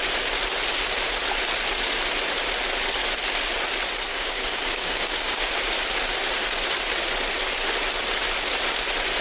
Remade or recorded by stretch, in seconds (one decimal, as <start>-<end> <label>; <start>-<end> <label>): 0.0-4.1 recorded; 4.1-5.5 remade; 5.5-9.2 recorded

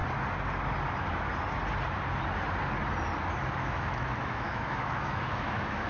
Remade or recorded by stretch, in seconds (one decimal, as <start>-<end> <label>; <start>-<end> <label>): 0.0-3.5 recorded; 3.5-5.9 remade

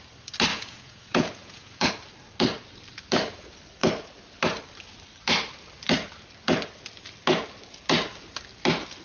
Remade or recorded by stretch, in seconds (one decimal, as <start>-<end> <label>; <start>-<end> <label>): 0.0-0.5 recorded; 0.5-1.9 remade; 1.9-9.0 recorded